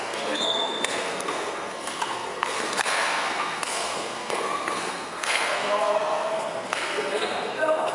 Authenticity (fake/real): fake